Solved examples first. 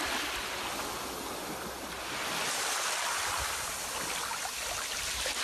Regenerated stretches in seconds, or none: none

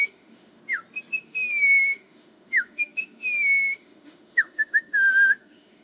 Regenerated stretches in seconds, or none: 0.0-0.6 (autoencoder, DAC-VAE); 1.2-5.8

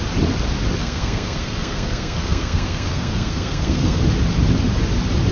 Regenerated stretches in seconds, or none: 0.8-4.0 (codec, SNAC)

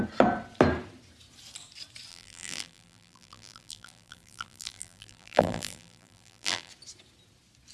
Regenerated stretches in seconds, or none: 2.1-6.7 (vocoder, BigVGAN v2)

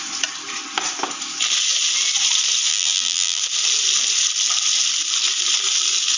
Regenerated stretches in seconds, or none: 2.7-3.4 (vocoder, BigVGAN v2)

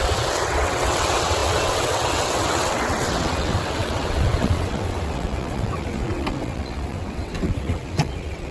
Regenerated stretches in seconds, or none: 0.0-8.5 (vocoder, WaveNeXt)

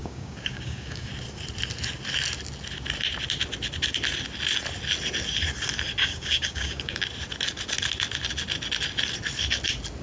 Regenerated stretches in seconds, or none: 0.0-1.1 (codec, DAC); 6.0-7.0